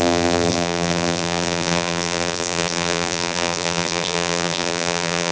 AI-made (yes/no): yes